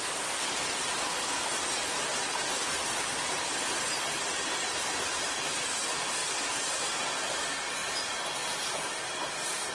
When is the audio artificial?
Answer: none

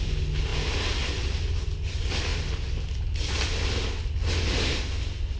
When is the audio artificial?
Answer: none

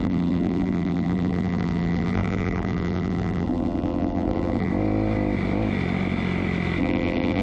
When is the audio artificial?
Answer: 0.0-4.7 (vocoder, BigVGAN v2); 6.8-7.4

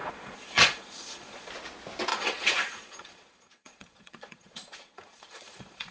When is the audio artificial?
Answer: 0.0-1.5 (vocoder, Vocos); 2.1-5.9

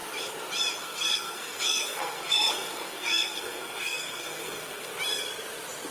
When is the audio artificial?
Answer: 0.8-4.9 (codec, SNAC)